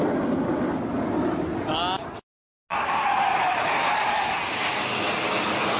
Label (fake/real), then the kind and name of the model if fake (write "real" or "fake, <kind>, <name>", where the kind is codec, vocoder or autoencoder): real